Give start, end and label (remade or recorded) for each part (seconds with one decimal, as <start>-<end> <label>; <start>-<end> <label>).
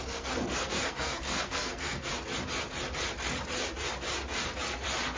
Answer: 0.0-2.1 remade; 2.1-5.2 recorded